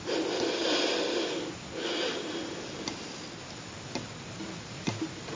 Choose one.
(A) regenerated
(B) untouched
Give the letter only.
B